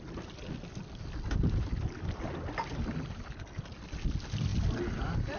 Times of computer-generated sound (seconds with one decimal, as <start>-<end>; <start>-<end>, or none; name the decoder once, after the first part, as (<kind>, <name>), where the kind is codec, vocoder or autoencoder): none